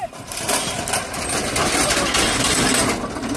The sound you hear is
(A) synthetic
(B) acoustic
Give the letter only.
B